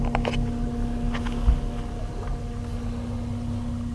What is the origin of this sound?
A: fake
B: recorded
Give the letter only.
B